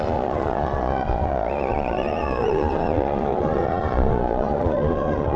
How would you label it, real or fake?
fake